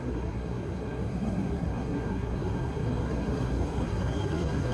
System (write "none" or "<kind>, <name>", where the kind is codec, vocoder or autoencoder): codec, SNAC